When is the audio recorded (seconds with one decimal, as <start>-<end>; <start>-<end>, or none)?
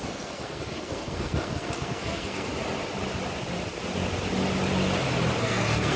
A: 2.5-5.4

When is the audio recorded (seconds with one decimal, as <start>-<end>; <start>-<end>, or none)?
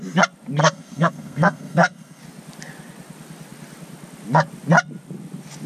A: 0.0-0.6; 2.2-5.7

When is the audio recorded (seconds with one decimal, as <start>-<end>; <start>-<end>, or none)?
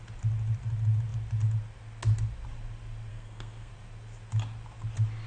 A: 0.0-3.1; 3.7-5.3